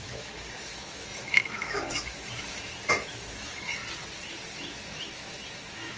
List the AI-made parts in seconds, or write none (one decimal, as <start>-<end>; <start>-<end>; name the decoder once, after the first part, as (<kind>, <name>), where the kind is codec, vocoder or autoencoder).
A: 0.0-3.8 (autoencoder, DAC-VAE); 4.6-6.0